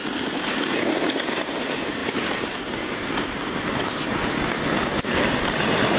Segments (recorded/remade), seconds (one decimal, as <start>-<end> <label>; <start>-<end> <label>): 0.0-6.0 recorded